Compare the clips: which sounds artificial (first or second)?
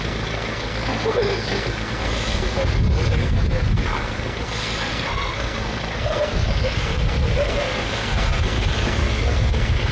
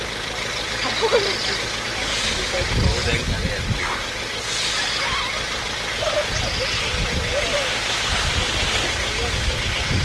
first